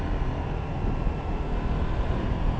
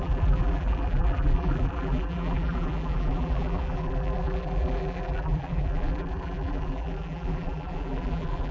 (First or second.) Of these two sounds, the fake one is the second